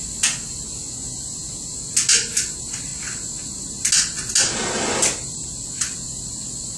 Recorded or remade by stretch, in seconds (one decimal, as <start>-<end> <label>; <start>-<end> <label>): 0.0-6.8 recorded